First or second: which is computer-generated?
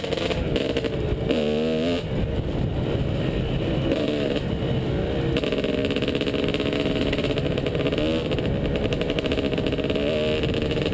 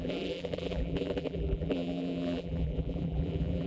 second